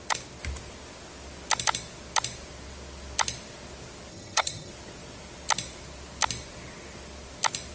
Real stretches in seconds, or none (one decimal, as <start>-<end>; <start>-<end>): 0.0-4.1; 4.7-7.7